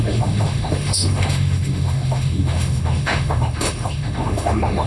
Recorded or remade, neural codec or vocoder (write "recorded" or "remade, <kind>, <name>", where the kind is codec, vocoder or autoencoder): remade, autoencoder, DAC-VAE